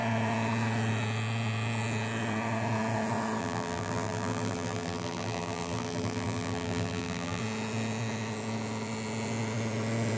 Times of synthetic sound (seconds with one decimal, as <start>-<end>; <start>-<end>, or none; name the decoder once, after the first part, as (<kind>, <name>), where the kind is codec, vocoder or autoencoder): 3.4-7.4 (vocoder, BigVGAN v2)